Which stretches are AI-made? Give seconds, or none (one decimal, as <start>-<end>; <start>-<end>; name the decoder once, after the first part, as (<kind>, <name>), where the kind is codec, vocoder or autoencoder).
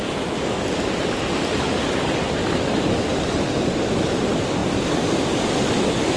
none